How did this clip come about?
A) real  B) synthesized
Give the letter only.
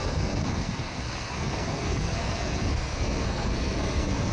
B